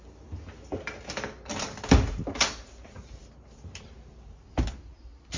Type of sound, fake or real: real